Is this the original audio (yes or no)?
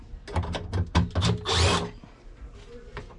yes